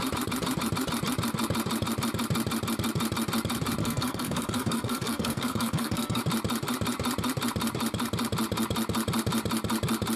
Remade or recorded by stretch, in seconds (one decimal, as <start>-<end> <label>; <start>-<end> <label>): 0.0-3.8 recorded; 3.8-6.2 remade; 6.2-10.2 recorded